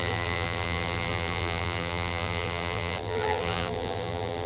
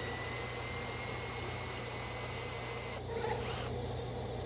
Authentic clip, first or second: second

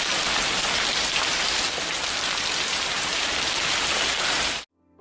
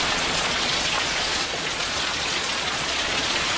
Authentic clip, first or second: first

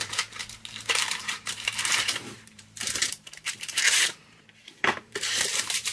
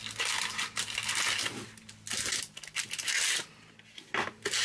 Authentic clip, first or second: second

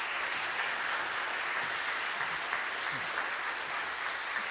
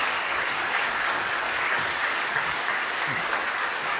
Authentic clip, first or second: first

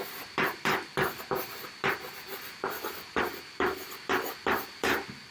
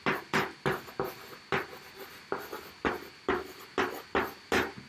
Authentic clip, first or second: second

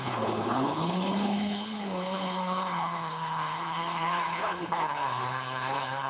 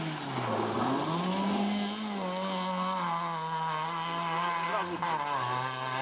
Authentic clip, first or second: second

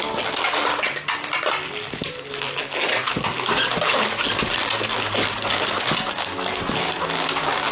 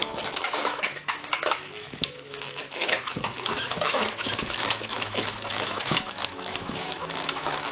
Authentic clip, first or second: first